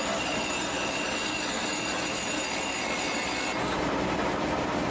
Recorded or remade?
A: recorded